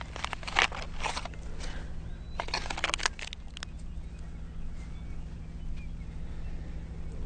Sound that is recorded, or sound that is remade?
recorded